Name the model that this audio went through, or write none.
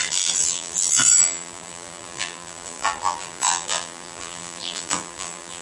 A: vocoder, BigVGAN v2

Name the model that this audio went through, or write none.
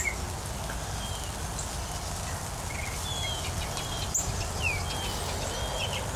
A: none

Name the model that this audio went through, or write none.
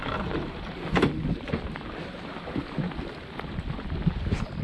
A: none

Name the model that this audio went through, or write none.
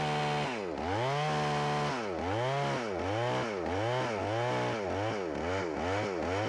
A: none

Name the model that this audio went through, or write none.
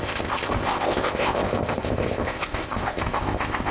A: codec, ZipCodec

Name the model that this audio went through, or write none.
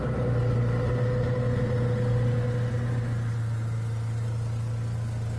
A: none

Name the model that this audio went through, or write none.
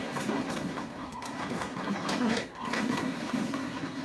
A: codec, SNAC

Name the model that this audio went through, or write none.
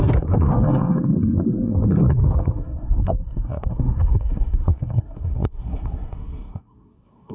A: codec, SNAC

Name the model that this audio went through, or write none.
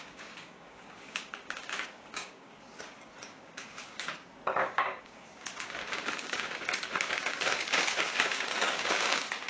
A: codec, DAC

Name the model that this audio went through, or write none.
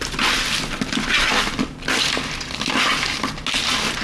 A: none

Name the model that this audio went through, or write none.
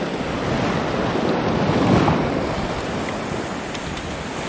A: none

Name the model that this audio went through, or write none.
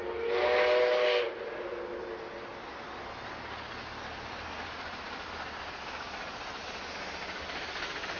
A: none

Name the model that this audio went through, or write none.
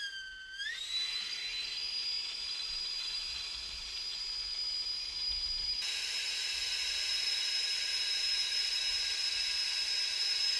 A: none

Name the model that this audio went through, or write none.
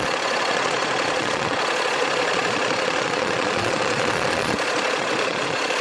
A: vocoder, Vocos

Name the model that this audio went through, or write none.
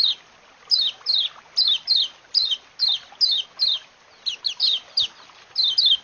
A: none